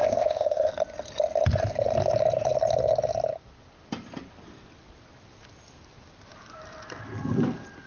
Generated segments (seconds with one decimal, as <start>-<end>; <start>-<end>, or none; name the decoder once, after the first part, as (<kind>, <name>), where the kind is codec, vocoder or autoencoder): 0.0-0.7 (codec, ZipCodec)